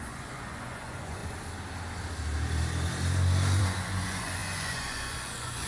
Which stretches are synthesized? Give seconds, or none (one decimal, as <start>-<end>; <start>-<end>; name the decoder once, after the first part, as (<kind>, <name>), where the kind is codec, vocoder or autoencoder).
0.0-1.2 (vocoder, Vocos); 3.6-5.7